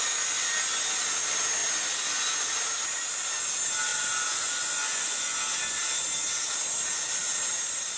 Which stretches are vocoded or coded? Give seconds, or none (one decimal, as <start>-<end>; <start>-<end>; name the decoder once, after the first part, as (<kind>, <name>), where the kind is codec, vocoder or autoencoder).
3.9-5.4 (vocoder, Vocos)